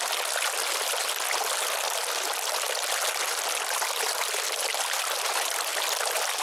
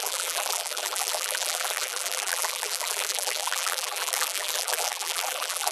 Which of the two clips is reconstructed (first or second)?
second